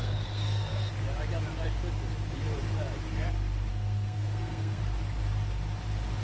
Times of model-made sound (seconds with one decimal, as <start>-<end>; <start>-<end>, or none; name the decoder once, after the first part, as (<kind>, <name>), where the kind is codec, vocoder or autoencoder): 0.0-0.9 (codec, SNAC); 3.7-4.8